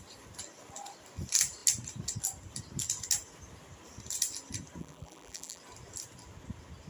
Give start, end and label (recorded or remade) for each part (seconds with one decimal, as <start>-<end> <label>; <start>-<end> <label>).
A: 0.0-4.8 recorded; 4.8-5.6 remade; 5.6-6.9 recorded